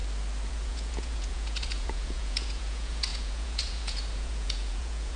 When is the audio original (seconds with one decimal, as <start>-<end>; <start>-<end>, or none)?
0.0-0.5